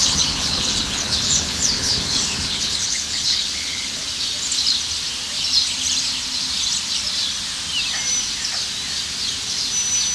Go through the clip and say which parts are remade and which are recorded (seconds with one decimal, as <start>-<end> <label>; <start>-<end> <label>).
0.0-4.0 remade; 4.0-10.1 recorded